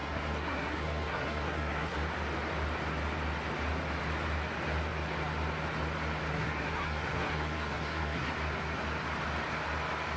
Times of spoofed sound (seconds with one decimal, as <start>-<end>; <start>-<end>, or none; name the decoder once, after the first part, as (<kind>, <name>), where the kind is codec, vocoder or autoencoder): 0.0-2.0 (codec, SNAC); 6.3-8.3